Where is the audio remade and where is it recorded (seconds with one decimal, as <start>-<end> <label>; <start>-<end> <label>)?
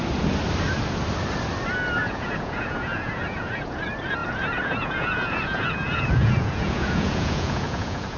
0.0-2.0 recorded; 2.0-3.8 remade; 3.8-4.2 recorded; 4.2-8.2 remade